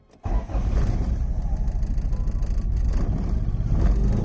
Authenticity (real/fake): real